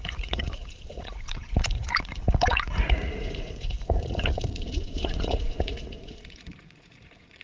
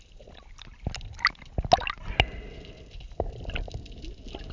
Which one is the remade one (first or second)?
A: first